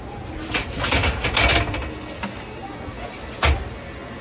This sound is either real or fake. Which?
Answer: real